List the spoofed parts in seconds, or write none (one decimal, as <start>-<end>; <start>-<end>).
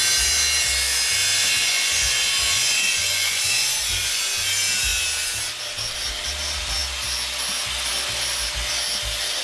1.6-4.2